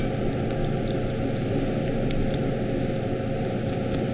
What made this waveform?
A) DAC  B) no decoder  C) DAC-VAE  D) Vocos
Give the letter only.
B